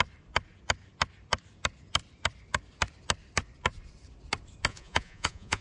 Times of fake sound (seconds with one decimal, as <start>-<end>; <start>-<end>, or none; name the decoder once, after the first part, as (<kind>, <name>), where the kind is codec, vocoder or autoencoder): 4.7-5.6 (vocoder, Vocos)